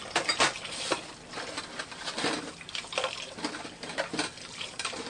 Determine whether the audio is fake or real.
real